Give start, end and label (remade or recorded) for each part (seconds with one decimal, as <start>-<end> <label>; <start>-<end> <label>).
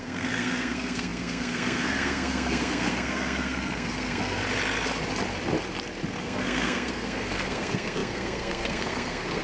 0.0-4.4 remade; 4.4-6.2 recorded; 6.2-9.4 remade